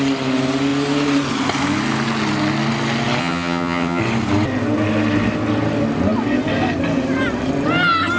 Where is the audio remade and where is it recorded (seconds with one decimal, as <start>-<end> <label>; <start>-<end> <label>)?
0.0-3.2 recorded; 3.2-4.0 remade; 4.0-8.2 recorded